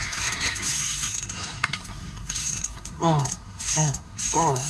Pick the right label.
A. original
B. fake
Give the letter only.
B